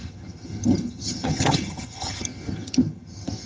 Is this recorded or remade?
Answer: remade